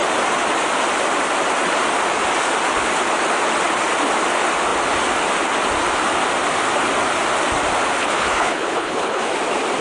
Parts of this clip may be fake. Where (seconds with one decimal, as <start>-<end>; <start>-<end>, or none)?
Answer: 8.0-9.2